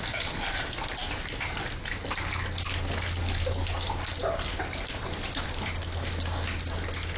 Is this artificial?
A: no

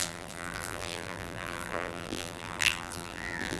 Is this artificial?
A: yes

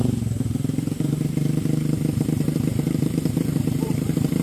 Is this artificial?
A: yes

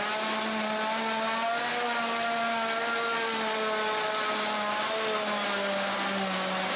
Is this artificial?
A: no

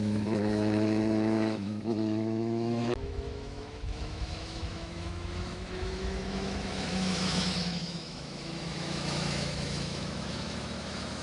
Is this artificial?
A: yes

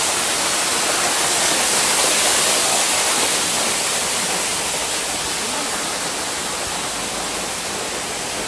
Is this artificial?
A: no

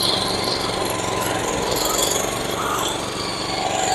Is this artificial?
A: no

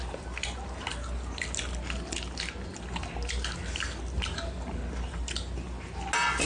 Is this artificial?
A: no